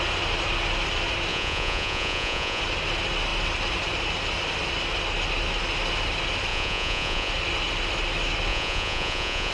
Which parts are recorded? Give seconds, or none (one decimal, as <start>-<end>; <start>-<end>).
0.0-1.3; 2.6-6.5; 7.3-8.5